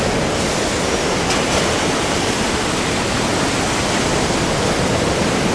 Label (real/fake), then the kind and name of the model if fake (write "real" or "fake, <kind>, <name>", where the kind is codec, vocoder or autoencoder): real